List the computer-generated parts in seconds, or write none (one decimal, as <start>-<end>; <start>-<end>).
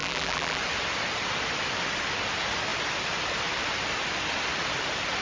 0.0-0.6